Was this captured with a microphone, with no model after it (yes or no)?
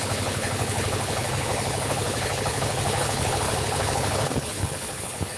no